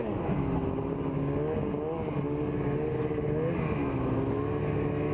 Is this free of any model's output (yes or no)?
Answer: yes